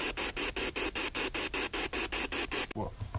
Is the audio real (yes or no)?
yes